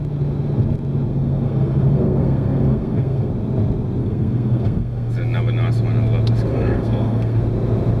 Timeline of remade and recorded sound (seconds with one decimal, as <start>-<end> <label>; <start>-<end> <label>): 0.0-1.1 recorded; 1.1-3.3 remade; 3.3-4.0 recorded; 4.0-5.1 remade; 5.1-6.5 recorded; 6.5-7.4 remade; 7.4-8.0 recorded